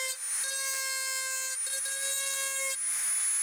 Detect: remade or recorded recorded